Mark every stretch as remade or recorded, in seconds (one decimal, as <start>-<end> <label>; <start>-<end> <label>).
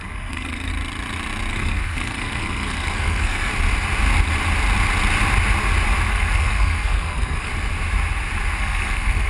0.0-0.7 remade; 0.7-1.5 recorded; 1.5-3.5 remade; 3.5-6.1 recorded; 6.1-7.5 remade; 7.5-8.6 recorded; 8.6-9.3 remade